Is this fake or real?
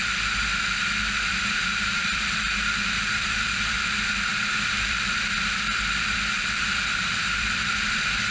fake